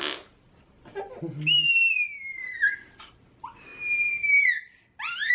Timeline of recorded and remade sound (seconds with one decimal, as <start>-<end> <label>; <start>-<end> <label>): 0.0-5.3 recorded